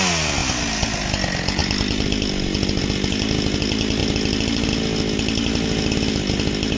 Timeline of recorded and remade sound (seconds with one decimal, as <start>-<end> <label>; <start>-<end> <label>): 0.0-6.8 recorded